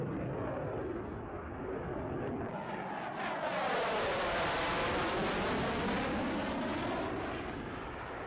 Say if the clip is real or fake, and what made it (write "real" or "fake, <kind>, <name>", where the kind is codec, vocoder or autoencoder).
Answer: real